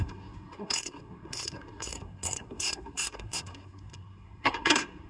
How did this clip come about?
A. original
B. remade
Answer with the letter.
B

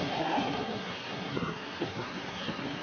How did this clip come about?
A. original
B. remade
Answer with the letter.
B